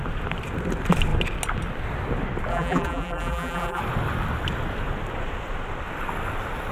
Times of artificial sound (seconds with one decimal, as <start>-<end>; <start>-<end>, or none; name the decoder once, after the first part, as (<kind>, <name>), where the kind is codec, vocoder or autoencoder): 2.5-3.8 (vocoder, BigVGAN v2)